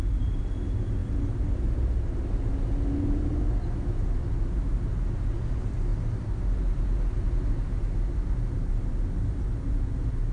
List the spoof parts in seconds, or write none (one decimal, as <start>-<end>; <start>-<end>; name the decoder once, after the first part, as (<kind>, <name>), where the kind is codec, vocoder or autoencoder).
none